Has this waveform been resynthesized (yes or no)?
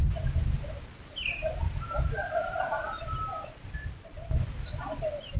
no